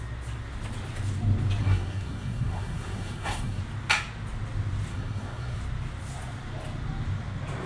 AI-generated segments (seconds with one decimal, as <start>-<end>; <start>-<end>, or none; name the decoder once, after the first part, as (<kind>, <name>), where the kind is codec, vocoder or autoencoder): 1.6-3.6 (codec, SNAC); 4.9-5.6